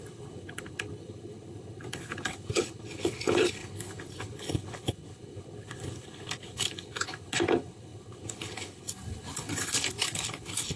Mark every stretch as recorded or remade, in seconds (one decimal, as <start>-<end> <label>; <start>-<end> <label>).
0.0-10.8 remade